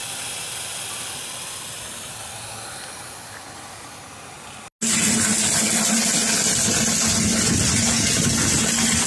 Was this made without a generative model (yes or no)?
yes